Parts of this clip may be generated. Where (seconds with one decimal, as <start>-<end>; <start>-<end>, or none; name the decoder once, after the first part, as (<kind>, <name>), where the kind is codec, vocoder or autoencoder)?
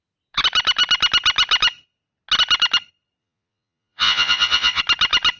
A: 3.2-4.8 (vocoder, Vocos)